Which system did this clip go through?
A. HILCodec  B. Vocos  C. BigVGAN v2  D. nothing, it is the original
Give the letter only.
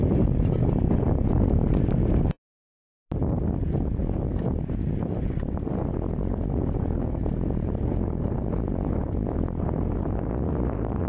D